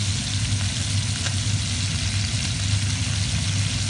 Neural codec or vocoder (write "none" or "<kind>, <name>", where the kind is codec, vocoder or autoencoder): none